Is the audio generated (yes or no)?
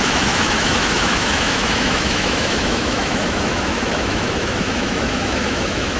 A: yes